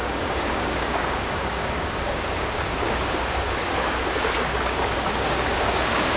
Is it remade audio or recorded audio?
remade